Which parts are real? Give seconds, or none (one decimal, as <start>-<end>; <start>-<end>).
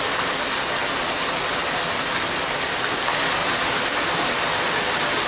0.0-5.3